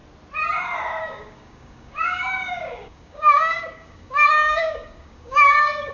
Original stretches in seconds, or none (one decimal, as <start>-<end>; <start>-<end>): 0.0-1.0